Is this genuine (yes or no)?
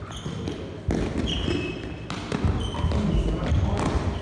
yes